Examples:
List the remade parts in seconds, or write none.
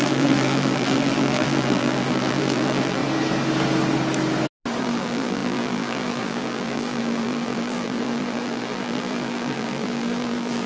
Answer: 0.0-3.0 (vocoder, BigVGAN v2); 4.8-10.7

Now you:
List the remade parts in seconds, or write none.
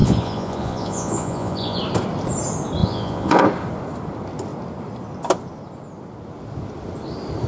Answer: 0.0-1.8 (vocoder, Vocos); 2.8-3.4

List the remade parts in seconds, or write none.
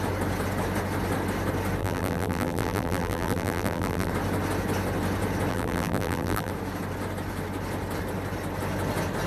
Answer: 1.8-4.1 (vocoder, BigVGAN v2); 5.5-6.5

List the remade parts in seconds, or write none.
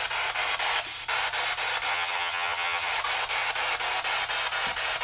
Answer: 1.9-2.9 (vocoder, HiFi-GAN)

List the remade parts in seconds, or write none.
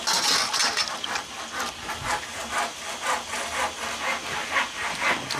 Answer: 0.6-1.4 (vocoder, BigVGAN v2)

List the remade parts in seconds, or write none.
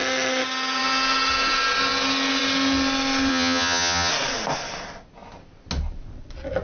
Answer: 3.3-4.1 (vocoder, HiFi-GAN)